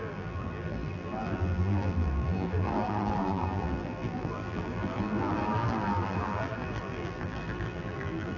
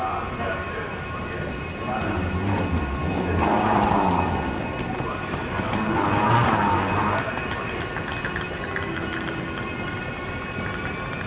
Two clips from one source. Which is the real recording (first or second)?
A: second